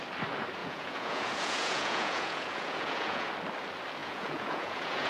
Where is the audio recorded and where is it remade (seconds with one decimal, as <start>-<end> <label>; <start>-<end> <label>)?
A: 0.0-0.6 recorded; 0.6-3.3 remade; 3.3-4.0 recorded; 4.0-5.1 remade